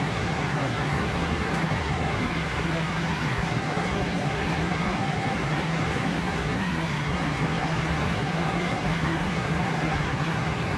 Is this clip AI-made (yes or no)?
yes